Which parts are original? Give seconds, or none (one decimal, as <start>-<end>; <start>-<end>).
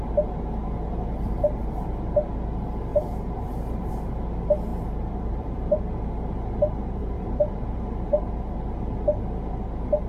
0.0-2.9; 3.9-4.7; 5.8-7.0; 8.2-10.1